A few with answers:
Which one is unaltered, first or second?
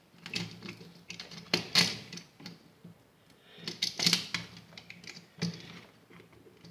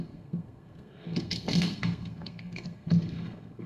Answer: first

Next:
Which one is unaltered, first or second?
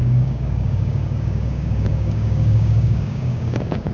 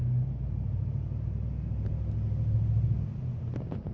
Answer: second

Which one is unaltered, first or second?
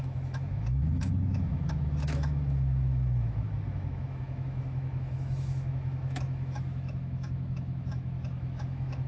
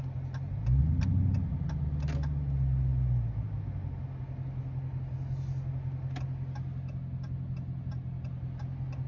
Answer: second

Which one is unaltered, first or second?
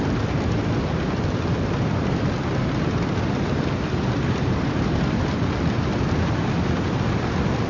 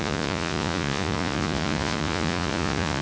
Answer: first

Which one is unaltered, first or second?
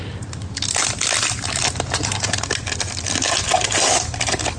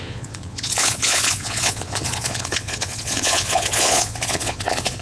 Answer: first